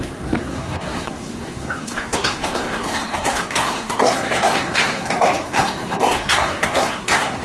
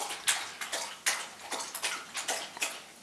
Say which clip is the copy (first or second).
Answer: first